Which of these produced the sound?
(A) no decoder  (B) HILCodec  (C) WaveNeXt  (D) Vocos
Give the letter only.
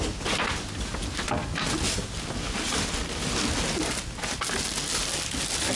A